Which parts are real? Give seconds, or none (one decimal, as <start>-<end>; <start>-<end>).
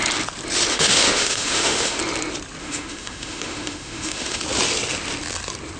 0.0-0.7; 2.0-2.6; 4.4-5.8